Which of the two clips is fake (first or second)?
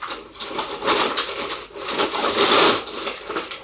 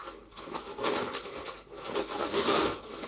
second